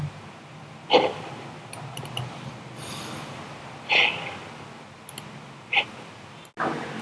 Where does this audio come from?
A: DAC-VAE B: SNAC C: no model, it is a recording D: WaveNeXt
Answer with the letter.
C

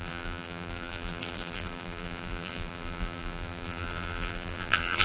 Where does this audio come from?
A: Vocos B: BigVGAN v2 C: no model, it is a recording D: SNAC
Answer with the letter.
B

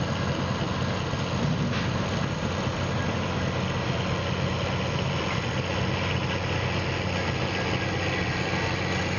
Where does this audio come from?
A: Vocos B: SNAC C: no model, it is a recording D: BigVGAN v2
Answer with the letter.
C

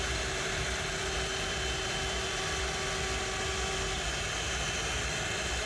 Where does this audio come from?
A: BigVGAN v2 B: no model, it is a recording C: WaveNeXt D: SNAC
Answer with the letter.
B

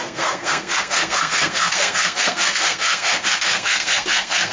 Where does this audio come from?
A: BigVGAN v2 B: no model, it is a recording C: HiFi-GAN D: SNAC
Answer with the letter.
D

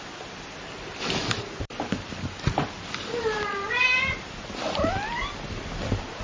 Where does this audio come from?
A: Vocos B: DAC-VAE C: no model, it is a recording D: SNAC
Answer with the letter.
C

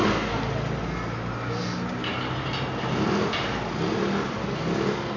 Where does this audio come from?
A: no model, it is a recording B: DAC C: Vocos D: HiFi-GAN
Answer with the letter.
A